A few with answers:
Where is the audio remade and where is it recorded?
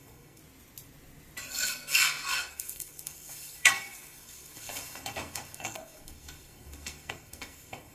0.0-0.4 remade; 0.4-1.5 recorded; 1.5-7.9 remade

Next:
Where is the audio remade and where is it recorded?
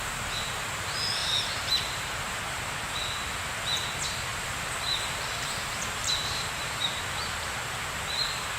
0.0-1.2 recorded; 1.2-2.4 remade; 2.4-4.3 recorded; 4.3-7.5 remade; 7.5-8.6 recorded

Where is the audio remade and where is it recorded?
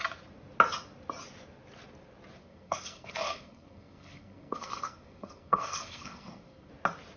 0.0-2.4 recorded; 2.4-6.7 remade; 6.7-7.2 recorded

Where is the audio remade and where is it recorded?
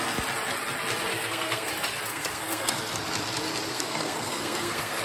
0.0-1.1 recorded; 1.1-1.7 remade; 1.7-2.1 recorded; 2.1-2.8 remade; 2.8-3.7 recorded; 3.7-5.0 remade